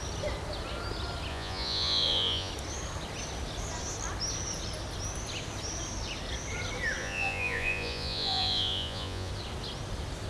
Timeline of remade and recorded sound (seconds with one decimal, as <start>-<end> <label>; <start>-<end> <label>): 0.0-1.3 recorded; 1.3-2.5 remade; 2.5-7.0 recorded; 7.0-9.3 remade; 9.3-10.3 recorded